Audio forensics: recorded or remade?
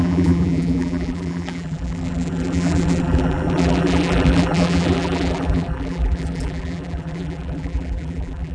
remade